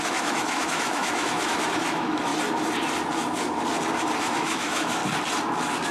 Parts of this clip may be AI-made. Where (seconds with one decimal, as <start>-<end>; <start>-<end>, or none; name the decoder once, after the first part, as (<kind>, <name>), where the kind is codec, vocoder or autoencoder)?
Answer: 0.0-2.3 (autoencoder, DAC-VAE); 4.2-5.0